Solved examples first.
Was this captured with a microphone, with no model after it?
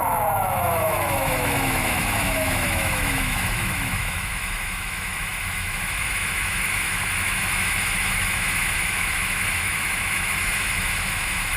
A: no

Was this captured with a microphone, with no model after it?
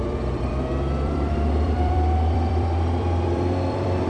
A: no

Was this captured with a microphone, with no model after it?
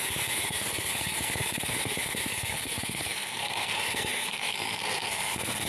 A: no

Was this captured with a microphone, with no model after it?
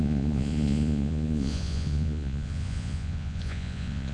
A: no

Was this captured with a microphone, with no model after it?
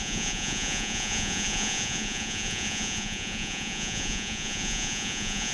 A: no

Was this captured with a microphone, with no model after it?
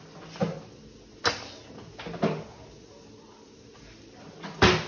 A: yes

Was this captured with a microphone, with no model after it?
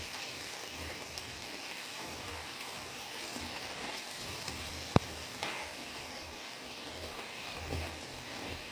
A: no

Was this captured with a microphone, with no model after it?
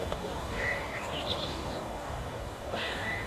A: no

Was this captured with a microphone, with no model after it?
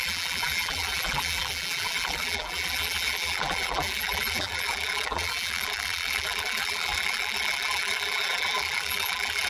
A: no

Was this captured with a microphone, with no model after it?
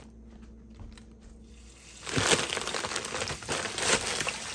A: yes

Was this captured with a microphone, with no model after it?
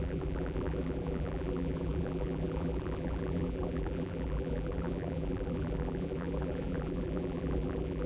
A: no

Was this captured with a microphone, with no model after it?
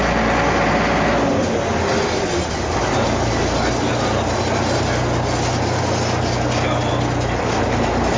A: yes